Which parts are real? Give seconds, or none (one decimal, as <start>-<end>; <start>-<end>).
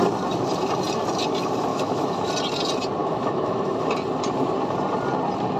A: 0.0-1.7; 2.3-3.0; 3.9-5.6